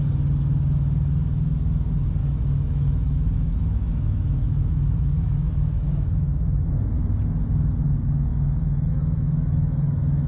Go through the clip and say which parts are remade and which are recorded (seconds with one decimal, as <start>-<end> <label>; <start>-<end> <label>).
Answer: 0.0-2.2 recorded; 2.2-6.7 remade; 6.7-8.3 recorded; 8.3-10.3 remade